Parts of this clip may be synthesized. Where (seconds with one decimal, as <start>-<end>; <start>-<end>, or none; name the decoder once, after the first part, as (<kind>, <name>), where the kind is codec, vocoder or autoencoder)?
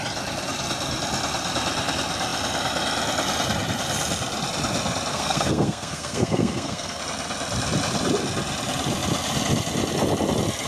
5.1-7.0 (codec, SNAC)